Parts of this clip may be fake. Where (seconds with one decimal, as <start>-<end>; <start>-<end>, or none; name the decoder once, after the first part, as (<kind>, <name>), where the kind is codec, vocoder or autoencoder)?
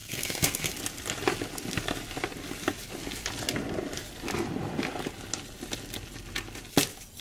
0.0-0.7 (codec, SNAC)